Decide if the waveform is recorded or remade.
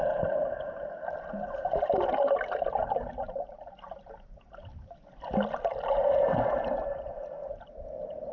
recorded